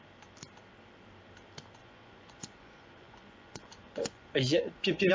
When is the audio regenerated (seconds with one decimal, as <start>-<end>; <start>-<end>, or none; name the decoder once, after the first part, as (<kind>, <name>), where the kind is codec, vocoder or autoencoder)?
1.8-5.1 (vocoder, Vocos)